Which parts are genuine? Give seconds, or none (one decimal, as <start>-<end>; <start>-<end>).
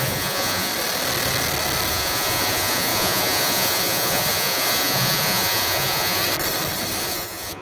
0.7-1.9; 6.2-7.0